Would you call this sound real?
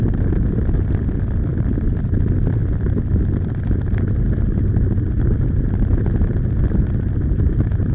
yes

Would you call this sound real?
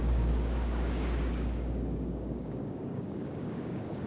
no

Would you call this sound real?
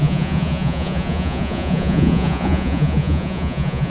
no